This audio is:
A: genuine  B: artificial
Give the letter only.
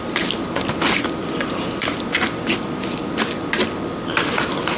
A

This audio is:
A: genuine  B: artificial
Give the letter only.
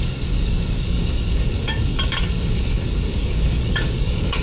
B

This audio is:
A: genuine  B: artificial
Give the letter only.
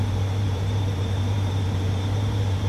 B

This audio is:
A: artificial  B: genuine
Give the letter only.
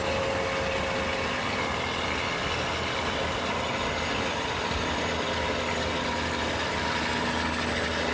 B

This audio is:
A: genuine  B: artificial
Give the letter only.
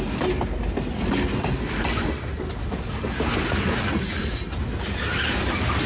A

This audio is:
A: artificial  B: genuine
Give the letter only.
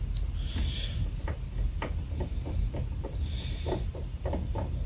B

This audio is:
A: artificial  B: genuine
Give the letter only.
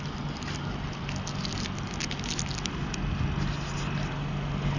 B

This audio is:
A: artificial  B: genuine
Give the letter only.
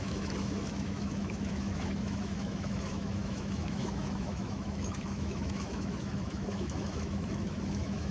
A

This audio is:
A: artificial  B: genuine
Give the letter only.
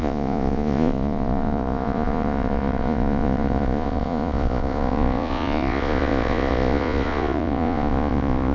A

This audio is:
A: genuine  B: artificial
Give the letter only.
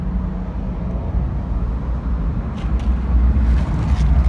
A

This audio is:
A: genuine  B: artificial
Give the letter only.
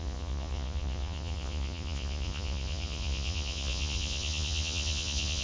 B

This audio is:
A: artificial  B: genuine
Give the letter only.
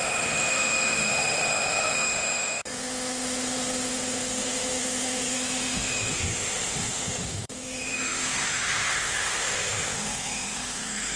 A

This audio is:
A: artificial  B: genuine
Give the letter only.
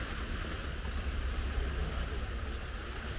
B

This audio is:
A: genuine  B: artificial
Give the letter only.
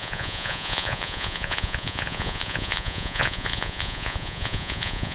B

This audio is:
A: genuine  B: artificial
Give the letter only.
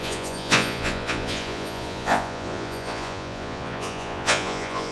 B